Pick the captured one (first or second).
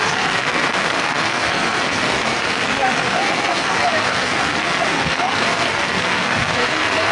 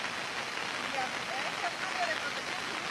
second